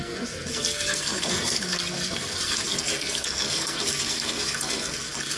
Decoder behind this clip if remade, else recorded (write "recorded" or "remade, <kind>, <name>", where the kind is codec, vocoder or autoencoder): remade, codec, SNAC